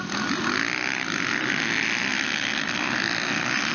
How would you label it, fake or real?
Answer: real